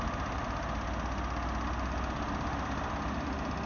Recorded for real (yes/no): yes